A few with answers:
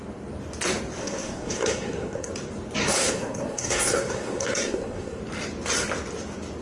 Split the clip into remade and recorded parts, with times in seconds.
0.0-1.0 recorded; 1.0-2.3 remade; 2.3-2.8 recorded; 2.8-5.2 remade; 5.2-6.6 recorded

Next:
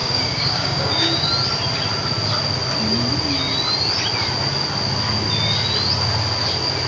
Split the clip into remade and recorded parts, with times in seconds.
0.0-1.3 remade; 1.3-6.9 recorded

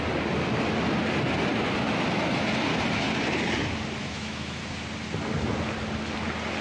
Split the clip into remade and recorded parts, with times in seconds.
0.0-4.0 recorded; 4.0-4.6 remade; 4.6-6.6 recorded